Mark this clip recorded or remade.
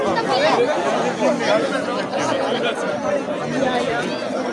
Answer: recorded